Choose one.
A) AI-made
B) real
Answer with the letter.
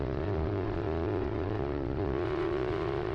A